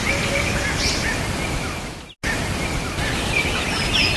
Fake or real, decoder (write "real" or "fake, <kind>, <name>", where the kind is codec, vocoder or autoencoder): real